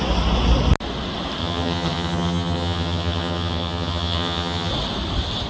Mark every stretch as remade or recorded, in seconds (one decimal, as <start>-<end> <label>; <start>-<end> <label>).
0.0-1.4 recorded; 1.4-4.7 remade; 4.7-5.5 recorded